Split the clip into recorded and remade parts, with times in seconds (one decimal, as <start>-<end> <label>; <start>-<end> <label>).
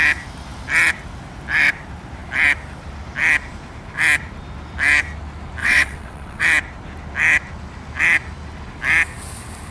0.0-5.6 recorded; 5.6-6.4 remade; 6.4-9.7 recorded